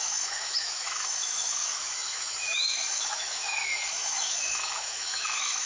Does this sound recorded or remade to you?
remade